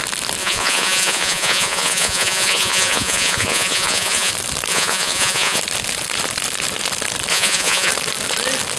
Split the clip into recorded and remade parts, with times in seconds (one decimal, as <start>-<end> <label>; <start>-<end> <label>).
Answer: 0.0-0.4 recorded; 0.4-4.3 remade; 4.3-4.7 recorded; 4.7-5.6 remade; 5.6-7.3 recorded; 7.3-7.9 remade; 7.9-8.8 recorded